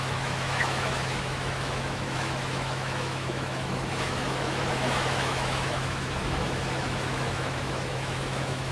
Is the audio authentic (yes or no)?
no